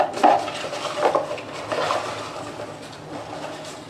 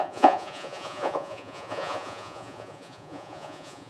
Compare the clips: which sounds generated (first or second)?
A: second